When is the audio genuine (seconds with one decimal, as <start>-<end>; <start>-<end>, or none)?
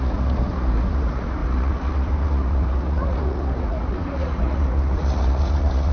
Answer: none